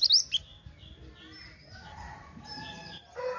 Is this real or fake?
real